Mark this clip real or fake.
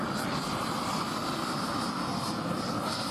real